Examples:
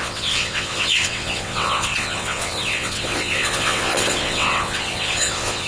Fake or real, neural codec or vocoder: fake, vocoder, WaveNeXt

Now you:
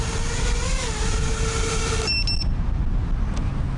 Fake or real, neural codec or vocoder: real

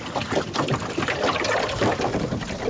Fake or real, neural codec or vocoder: real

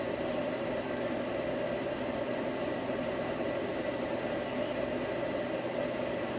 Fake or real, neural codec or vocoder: real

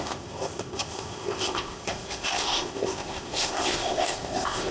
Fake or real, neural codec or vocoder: fake, codec, ZipCodec